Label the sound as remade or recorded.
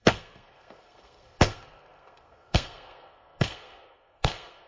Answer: remade